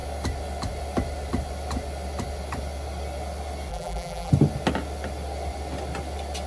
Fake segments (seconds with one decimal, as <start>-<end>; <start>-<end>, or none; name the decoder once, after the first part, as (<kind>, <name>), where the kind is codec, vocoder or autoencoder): 3.7-4.3 (vocoder, BigVGAN v2)